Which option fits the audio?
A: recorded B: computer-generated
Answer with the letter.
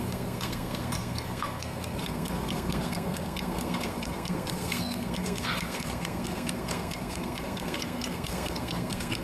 B